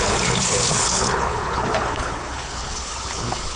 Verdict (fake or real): fake